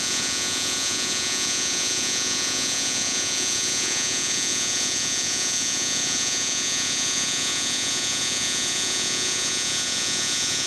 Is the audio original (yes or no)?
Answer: no